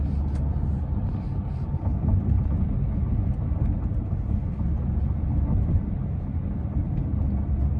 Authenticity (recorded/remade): recorded